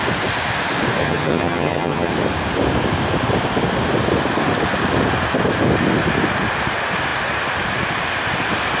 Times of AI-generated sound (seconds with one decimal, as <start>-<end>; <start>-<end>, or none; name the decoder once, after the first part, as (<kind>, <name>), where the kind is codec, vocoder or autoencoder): 1.0-2.1 (vocoder, HiFi-GAN)